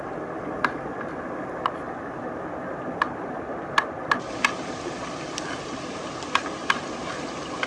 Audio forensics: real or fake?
real